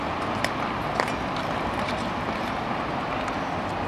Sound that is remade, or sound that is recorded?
recorded